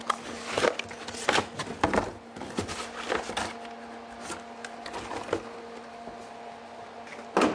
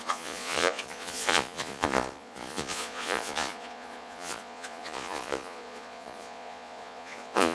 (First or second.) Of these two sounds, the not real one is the second